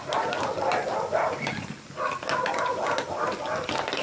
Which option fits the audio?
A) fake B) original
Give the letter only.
B